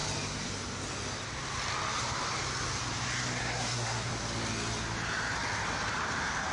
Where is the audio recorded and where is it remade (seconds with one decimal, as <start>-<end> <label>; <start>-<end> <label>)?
0.0-3.4 recorded; 3.4-4.1 remade; 4.1-6.5 recorded